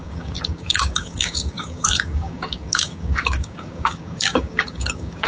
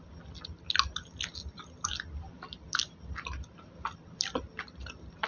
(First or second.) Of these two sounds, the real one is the second